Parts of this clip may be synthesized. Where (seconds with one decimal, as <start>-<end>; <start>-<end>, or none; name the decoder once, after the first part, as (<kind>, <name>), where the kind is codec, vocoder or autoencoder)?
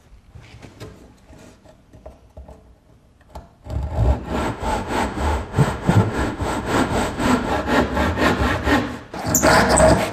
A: 4.4-7.5 (autoencoder, DAC-VAE)